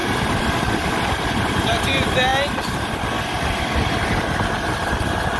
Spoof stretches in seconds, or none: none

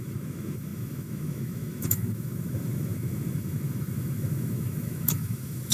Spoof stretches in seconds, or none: 0.0-5.7

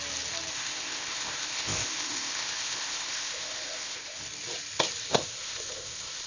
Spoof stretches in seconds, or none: 0.5-4.2; 5.0-6.3